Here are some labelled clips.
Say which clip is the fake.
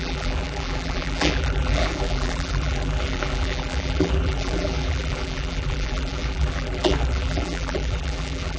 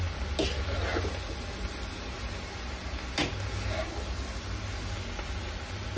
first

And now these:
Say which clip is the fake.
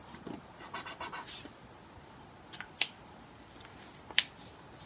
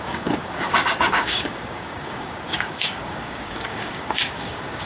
second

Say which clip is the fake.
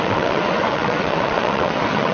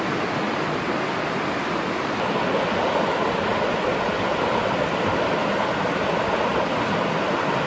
first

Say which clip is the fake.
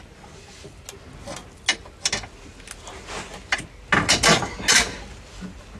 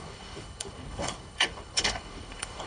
second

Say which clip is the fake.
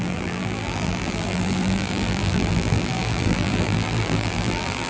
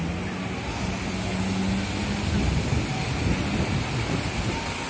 first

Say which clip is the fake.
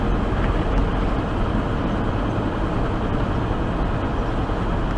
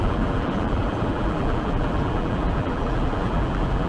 second